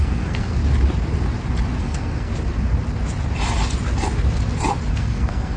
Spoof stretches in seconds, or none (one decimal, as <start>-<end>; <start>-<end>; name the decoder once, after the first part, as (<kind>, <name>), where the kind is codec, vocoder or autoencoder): 0.0-0.6 (codec, SNAC); 1.8-2.3; 4.9-5.6